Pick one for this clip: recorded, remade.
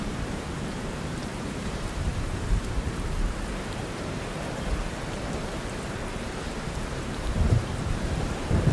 remade